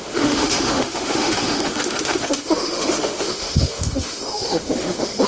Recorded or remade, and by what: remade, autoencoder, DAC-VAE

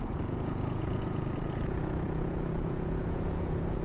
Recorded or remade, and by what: remade, vocoder, Vocos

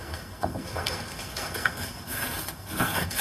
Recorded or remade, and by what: remade, codec, SNAC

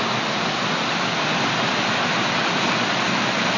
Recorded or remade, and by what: recorded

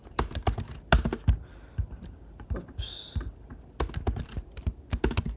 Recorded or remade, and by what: recorded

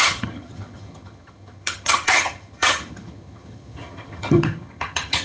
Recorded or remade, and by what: remade, vocoder, HiFi-GAN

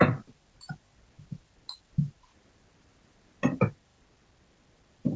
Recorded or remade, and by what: recorded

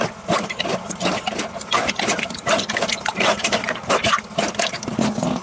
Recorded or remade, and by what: recorded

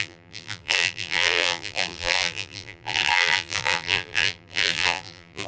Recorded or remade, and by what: remade, vocoder, BigVGAN v2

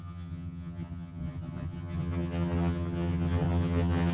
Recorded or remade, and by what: remade, vocoder, HiFi-GAN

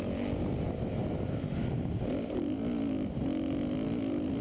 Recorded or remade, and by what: recorded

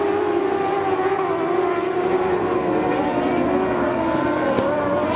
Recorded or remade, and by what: recorded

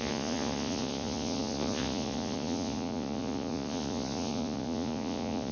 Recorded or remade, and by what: remade, vocoder, Vocos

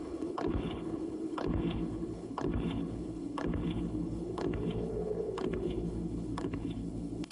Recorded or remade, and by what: remade, codec, HILCodec